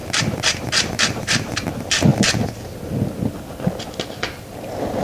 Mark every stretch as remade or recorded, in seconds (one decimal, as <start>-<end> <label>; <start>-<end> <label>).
0.0-5.0 recorded